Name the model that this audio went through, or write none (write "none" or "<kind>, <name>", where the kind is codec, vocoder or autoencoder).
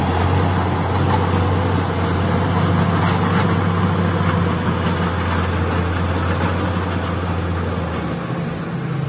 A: none